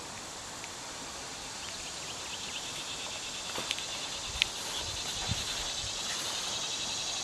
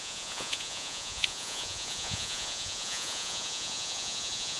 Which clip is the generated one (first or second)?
second